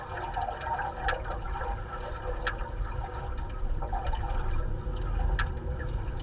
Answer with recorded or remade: recorded